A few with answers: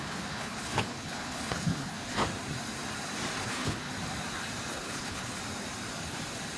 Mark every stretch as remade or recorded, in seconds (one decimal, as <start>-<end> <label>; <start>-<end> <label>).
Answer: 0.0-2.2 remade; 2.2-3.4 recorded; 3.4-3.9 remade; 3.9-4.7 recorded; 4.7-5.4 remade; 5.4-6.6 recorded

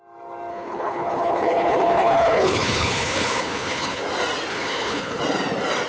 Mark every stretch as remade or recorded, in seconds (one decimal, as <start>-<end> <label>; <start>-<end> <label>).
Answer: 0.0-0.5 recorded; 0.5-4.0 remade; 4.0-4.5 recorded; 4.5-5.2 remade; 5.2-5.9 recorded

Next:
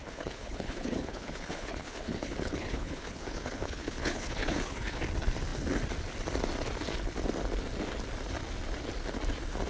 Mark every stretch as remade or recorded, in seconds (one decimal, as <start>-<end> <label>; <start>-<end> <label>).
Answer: 0.0-5.0 remade; 5.0-9.7 recorded

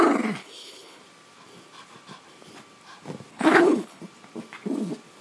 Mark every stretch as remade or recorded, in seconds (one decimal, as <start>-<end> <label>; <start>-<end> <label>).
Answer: 0.0-0.4 recorded; 0.4-1.0 remade; 1.0-3.3 recorded; 3.3-4.0 remade; 4.0-5.2 recorded

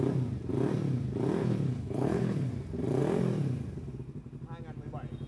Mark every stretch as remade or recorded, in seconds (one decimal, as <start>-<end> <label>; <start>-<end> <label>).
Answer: 0.0-1.4 recorded; 1.4-2.5 remade; 2.5-5.3 recorded

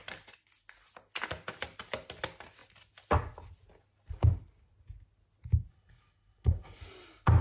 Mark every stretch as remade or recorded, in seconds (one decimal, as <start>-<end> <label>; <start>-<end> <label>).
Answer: 0.0-5.7 recorded; 5.7-6.8 remade; 6.8-7.4 recorded

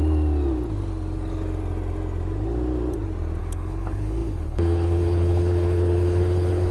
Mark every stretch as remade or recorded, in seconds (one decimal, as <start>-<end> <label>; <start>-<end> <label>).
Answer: 0.0-3.4 recorded; 3.4-6.7 remade

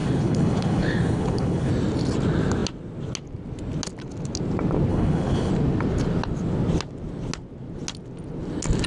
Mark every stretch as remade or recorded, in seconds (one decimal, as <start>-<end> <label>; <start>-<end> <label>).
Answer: 0.0-1.7 remade; 1.7-4.9 recorded; 4.9-5.5 remade; 5.5-8.9 recorded